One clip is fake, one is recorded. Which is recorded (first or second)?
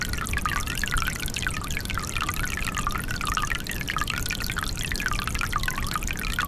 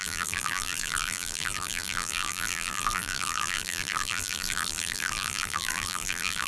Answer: first